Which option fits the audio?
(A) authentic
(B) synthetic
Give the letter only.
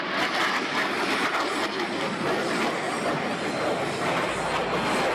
A